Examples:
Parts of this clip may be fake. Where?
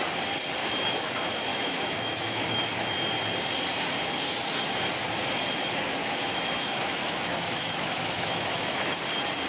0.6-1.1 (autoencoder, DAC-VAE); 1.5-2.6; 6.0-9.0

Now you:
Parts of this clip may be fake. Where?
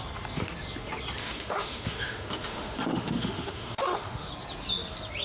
1.2-4.3 (autoencoder, DAC-VAE)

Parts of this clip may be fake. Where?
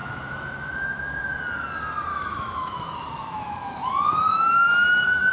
0.0-1.2 (autoencoder, DAC-VAE); 2.1-5.3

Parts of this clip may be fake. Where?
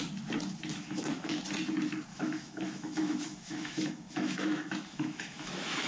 0.7-1.3 (autoencoder, DAC-VAE); 2.1-5.9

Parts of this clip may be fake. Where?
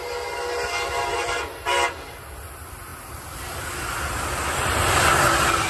none